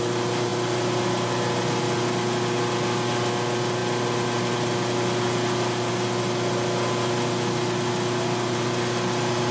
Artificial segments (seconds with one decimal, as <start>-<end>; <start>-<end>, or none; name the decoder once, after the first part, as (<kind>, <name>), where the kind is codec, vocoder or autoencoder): none